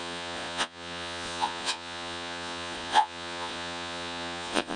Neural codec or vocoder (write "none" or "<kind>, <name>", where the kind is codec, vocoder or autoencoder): vocoder, Vocos